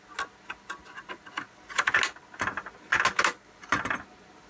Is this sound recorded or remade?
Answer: recorded